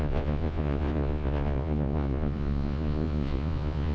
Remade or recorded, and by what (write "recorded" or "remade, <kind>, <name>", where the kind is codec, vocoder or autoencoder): remade, vocoder, Vocos